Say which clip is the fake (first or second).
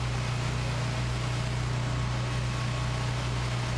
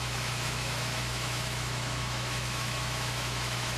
second